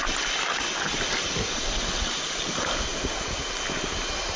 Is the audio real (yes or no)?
yes